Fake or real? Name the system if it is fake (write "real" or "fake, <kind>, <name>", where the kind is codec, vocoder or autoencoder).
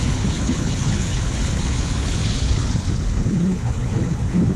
fake, codec, HILCodec